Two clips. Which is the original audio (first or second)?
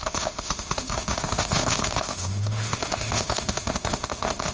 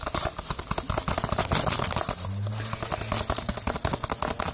second